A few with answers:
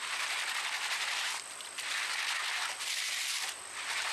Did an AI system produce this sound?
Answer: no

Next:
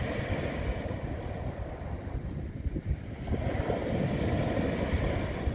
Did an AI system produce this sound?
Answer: no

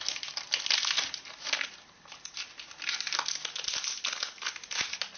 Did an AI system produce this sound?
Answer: no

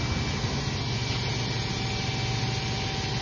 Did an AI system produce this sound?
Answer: no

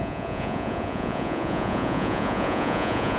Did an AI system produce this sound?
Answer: yes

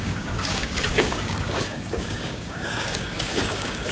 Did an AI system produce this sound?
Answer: yes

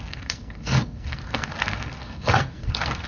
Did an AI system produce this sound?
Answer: yes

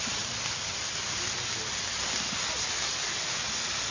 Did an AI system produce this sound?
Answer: no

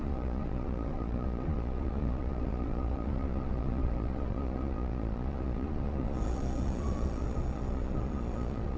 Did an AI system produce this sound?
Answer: yes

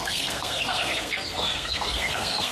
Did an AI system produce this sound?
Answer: yes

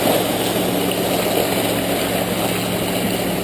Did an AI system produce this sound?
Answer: no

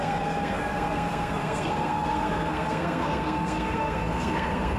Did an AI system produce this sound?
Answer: yes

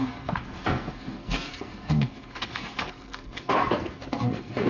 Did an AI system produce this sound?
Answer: yes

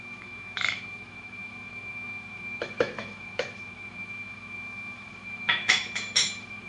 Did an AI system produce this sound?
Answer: yes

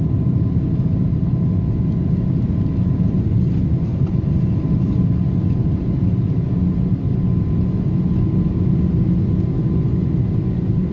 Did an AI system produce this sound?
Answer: no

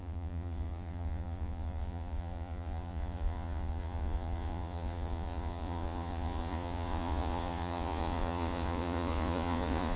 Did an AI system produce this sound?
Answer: yes